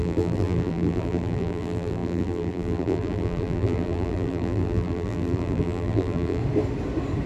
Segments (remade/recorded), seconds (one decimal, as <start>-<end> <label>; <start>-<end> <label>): 0.0-6.4 remade; 6.4-7.3 recorded